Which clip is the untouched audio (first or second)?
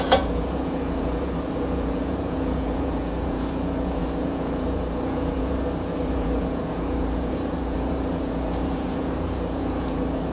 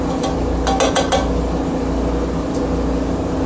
second